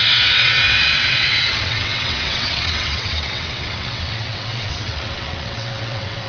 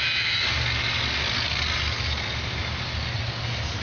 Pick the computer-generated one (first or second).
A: first